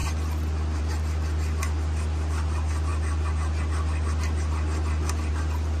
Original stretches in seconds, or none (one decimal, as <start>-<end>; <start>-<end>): 0.0-5.8